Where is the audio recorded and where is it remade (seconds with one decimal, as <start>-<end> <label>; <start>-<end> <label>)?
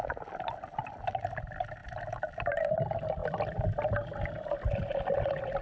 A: 0.0-5.6 recorded